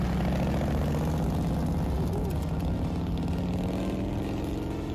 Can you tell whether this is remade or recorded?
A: recorded